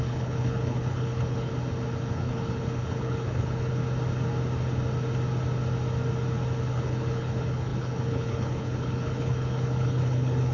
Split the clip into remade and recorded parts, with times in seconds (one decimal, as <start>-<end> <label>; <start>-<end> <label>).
0.0-1.5 remade; 1.5-2.1 recorded; 2.1-3.8 remade; 3.8-6.7 recorded; 6.7-10.5 remade